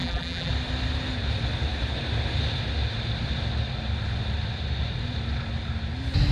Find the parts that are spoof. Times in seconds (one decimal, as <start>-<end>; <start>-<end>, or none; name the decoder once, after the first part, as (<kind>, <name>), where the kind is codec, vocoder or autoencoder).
0.0-0.5 (vocoder, BigVGAN v2)